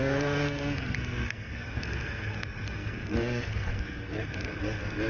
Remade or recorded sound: remade